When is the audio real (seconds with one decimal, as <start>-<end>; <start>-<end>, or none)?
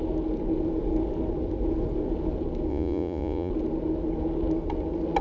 0.0-2.7; 3.5-5.2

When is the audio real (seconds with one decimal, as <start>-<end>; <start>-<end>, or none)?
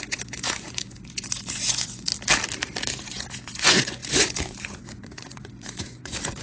2.1-2.9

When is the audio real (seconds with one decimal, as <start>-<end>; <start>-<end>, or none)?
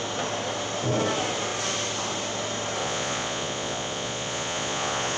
0.0-2.8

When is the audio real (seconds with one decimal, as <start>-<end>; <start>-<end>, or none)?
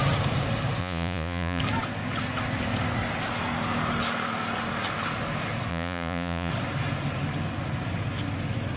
0.0-0.8; 1.6-5.7; 6.5-8.8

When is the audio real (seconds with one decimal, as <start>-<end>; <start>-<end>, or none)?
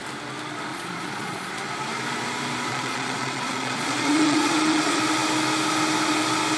0.0-0.7; 1.5-2.7; 5.0-6.6